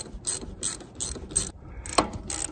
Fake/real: real